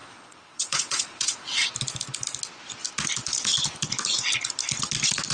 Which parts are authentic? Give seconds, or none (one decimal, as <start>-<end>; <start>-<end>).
1.7-5.3